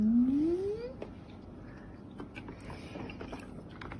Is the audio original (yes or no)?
yes